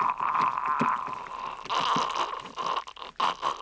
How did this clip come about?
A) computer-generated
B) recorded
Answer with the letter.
B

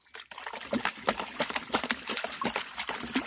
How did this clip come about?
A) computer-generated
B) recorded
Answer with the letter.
B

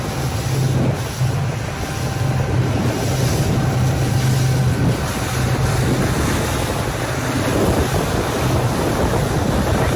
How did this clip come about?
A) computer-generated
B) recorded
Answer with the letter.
B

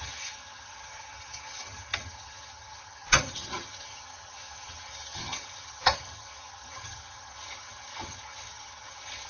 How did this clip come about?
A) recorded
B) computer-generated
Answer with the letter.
B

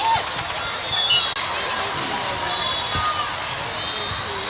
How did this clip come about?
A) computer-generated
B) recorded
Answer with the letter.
B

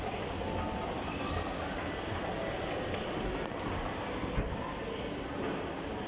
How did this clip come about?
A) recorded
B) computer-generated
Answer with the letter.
A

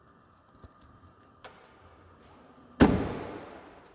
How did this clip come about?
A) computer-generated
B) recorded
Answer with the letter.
B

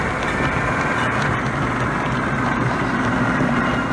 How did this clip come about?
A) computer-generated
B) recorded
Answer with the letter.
B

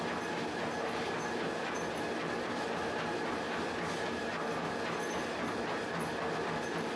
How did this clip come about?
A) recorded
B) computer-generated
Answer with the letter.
A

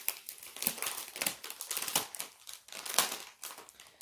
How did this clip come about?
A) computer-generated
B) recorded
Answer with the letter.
B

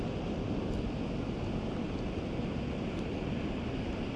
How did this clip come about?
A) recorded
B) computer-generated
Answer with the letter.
A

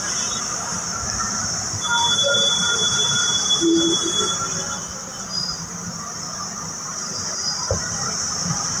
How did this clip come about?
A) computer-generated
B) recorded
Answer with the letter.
A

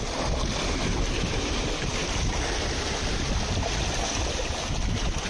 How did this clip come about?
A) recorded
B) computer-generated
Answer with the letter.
A